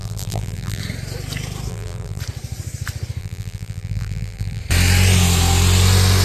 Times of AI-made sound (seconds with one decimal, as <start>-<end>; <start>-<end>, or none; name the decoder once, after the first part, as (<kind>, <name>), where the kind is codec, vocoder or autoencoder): 0.0-0.8 (vocoder, BigVGAN v2); 1.7-2.2; 3.2-4.6